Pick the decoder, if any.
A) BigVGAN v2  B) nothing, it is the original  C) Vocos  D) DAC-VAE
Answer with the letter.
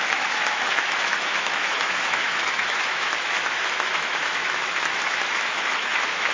D